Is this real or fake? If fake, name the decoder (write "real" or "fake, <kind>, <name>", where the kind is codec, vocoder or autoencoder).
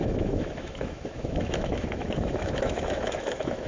fake, autoencoder, DAC-VAE